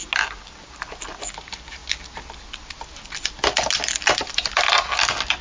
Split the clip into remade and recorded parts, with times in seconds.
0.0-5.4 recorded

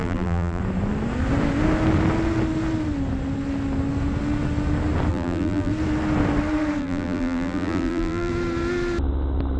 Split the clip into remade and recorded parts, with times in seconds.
0.0-0.6 remade; 0.6-5.1 recorded; 5.1-5.7 remade; 5.7-6.8 recorded; 6.8-8.3 remade; 8.3-9.6 recorded